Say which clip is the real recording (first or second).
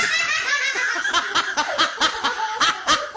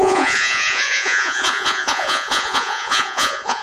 first